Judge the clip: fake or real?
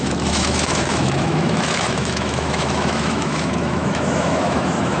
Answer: fake